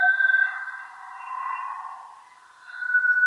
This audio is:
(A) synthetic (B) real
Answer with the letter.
B